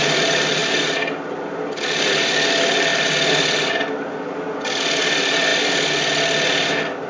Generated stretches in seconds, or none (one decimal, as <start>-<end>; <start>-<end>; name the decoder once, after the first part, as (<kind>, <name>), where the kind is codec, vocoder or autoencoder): none